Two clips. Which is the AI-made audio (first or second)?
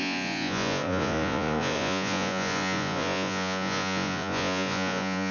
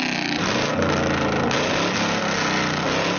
first